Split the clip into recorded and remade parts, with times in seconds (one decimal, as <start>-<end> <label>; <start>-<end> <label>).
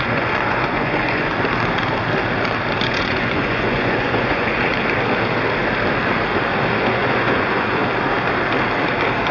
0.0-1.3 remade; 1.3-2.8 recorded; 2.8-4.7 remade; 4.7-6.7 recorded; 6.7-7.8 remade; 7.8-9.3 recorded